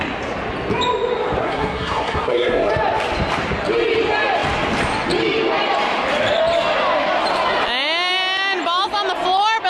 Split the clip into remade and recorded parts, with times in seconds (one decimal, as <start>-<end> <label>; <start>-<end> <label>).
0.0-1.4 recorded; 1.4-2.7 remade; 2.7-9.7 recorded